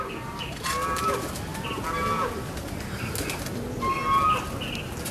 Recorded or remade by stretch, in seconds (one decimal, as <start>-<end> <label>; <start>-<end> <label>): 0.0-5.1 recorded